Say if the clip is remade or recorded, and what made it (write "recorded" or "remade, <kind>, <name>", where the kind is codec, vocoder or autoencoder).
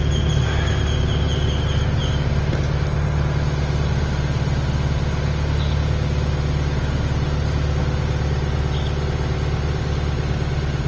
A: recorded